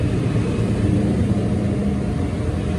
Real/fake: real